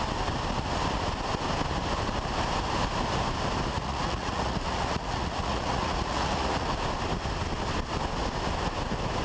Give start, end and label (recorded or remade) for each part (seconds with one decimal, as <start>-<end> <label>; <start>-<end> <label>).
0.0-3.7 recorded; 3.7-6.7 remade; 6.7-9.2 recorded